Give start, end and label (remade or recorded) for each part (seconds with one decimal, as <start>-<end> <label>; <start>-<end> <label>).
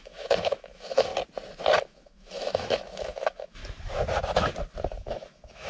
0.0-1.1 remade; 1.1-1.8 recorded; 1.8-3.6 remade; 3.6-4.9 recorded; 4.9-5.7 remade